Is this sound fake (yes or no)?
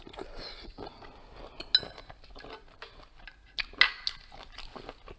no